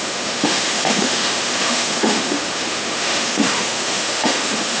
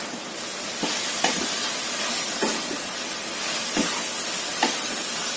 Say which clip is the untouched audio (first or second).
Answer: second